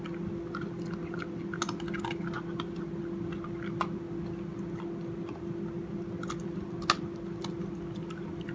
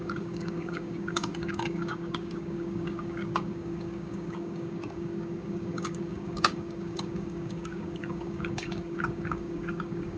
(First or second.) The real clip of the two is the first